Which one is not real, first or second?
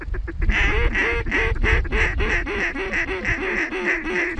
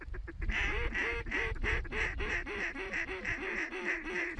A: second